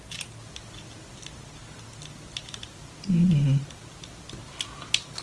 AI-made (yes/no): no